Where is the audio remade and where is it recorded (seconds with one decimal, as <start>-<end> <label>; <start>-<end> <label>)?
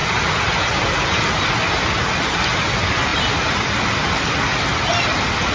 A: 0.0-5.5 recorded